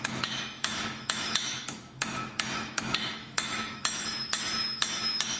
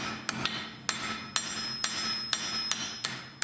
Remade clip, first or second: first